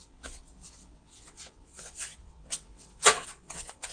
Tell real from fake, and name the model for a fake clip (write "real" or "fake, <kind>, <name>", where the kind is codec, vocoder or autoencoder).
fake, vocoder, WaveNeXt